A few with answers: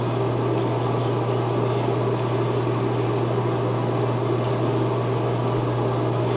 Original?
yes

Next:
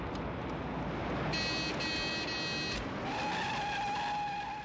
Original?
yes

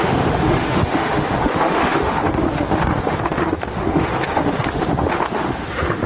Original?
no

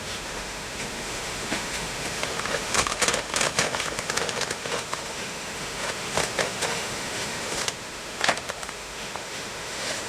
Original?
no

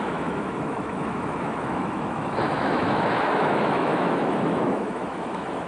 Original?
no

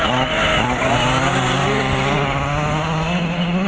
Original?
yes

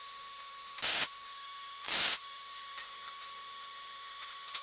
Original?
no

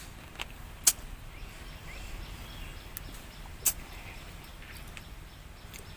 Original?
yes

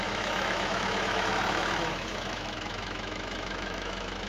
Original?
no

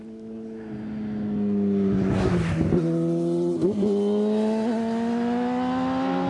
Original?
yes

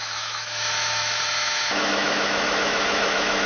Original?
no